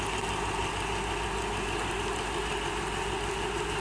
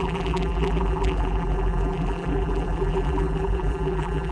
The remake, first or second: second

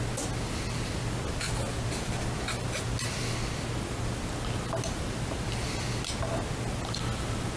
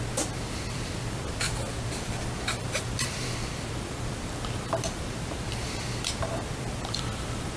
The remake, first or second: second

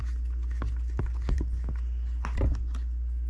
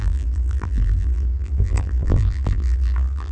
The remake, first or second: second